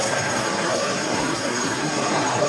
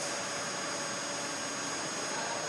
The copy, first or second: first